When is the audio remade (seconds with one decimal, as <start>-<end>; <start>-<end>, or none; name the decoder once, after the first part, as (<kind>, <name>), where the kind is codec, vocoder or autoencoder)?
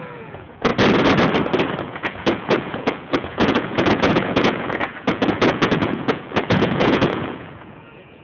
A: 0.0-0.7 (vocoder, Vocos); 1.8-8.2